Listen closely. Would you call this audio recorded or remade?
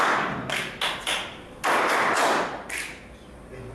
recorded